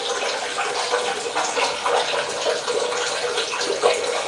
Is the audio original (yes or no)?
yes